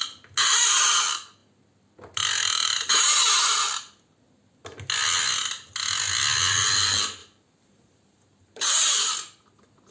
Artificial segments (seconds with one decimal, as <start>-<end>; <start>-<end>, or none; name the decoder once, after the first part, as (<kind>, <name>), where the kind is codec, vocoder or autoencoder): 7.2-9.1 (vocoder, BigVGAN v2)